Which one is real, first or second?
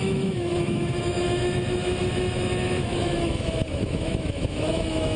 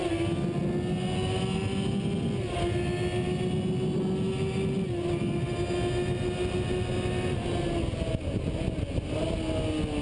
second